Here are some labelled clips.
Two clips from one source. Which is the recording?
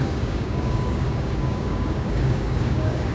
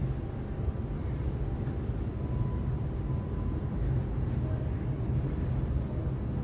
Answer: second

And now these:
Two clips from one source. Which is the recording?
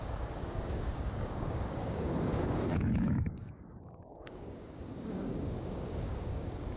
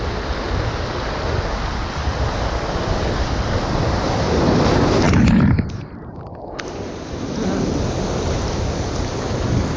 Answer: second